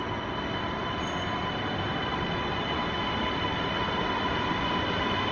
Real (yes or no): yes